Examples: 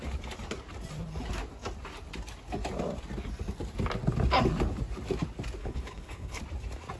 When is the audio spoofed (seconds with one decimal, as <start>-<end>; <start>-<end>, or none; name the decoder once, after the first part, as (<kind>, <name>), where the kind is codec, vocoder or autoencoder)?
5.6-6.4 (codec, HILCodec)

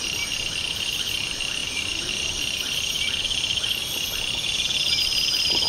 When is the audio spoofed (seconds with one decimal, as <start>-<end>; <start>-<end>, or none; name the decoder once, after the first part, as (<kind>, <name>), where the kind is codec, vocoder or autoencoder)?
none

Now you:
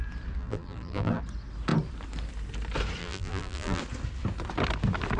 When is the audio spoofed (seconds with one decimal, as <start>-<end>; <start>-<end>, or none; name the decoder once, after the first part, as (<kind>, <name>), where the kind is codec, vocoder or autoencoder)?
0.4-1.2 (vocoder, BigVGAN v2); 3.0-3.8

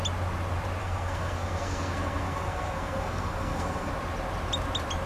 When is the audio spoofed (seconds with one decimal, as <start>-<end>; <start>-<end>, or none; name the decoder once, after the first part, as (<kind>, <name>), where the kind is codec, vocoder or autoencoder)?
0.8-3.9 (codec, SNAC)

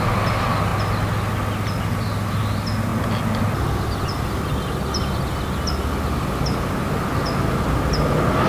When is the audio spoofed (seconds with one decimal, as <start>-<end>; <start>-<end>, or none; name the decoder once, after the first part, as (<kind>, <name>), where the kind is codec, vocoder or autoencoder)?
none